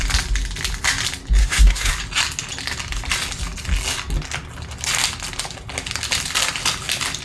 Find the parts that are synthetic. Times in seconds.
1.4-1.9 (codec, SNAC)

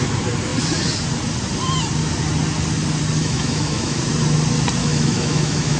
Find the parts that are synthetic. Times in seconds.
3.2-4.0 (autoencoder, DAC-VAE); 4.8-5.8